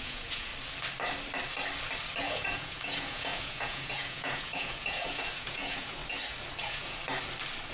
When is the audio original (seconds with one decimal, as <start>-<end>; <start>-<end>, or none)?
0.5-2.2; 6.0-6.6; 7.0-7.7